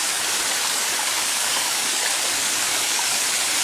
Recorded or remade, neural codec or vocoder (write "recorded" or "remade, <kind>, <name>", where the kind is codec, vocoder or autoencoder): remade, codec, DAC